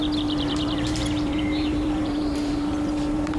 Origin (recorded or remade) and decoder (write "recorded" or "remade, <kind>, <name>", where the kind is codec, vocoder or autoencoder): remade, vocoder, BigVGAN v2